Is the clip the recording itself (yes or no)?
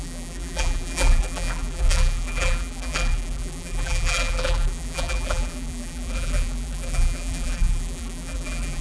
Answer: no